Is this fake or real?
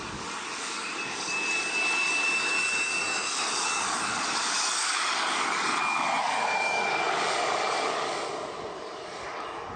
fake